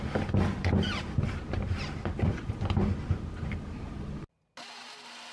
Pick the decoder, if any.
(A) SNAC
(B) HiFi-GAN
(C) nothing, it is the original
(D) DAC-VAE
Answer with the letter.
C